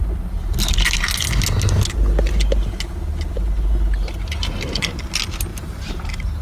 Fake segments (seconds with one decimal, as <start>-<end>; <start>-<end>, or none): 5.5-6.4